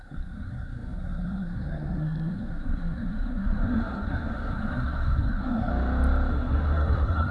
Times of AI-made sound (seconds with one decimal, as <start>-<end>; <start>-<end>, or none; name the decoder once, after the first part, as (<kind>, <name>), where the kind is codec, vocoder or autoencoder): 0.0-5.7 (codec, SNAC); 6.3-7.3